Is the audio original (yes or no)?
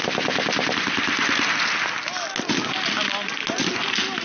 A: yes